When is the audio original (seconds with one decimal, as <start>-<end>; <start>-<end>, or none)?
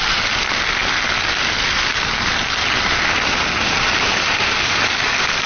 0.0-5.5